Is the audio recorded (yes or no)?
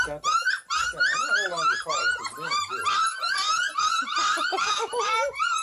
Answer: yes